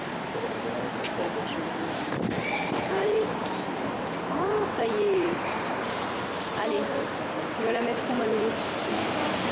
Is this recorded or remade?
remade